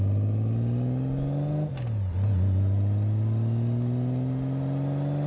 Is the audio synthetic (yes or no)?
no